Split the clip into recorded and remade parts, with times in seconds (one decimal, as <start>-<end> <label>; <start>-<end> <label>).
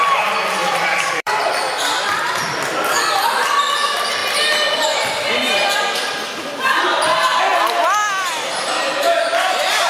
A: 0.0-4.2 remade; 4.2-6.8 recorded; 6.8-7.5 remade; 7.5-9.9 recorded